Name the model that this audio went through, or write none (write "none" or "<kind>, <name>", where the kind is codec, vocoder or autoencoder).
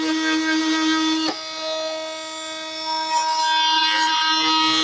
none